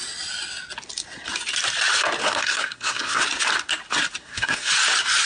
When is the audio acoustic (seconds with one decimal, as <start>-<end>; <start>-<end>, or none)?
0.0-2.2; 3.2-4.2; 4.7-5.3

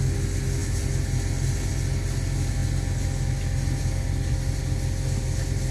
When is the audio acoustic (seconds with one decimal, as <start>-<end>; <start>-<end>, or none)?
0.0-5.7

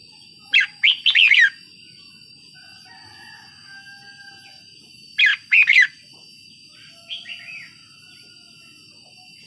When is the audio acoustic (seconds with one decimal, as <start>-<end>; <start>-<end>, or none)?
0.0-9.5